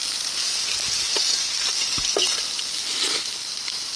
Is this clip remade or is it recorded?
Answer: recorded